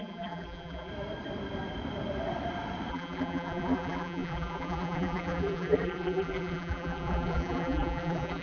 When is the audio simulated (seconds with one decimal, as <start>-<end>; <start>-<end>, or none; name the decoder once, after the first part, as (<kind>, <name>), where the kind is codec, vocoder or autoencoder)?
0.0-0.9 (vocoder, BigVGAN v2); 2.9-8.4